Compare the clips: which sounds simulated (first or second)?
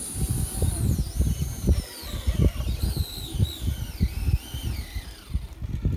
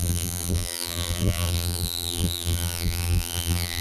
second